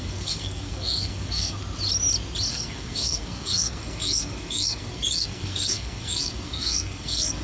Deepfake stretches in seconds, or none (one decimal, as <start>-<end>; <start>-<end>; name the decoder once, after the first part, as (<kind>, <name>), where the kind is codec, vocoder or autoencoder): 0.0-1.6 (codec, SNAC); 2.5-7.4